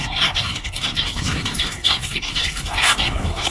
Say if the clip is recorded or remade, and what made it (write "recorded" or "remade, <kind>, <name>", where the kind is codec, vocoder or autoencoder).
remade, codec, SNAC